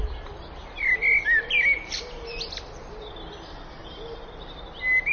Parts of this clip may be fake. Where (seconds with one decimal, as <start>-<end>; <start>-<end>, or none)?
none